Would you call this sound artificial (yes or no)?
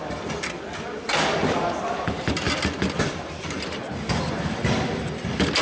no